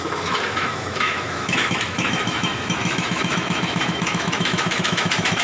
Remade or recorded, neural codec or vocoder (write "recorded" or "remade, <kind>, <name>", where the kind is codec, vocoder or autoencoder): remade, autoencoder, DAC-VAE